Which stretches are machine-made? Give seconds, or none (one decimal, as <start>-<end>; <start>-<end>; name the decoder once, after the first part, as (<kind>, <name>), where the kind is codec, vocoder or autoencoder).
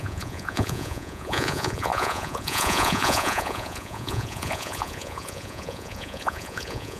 0.0-7.0 (vocoder, Vocos)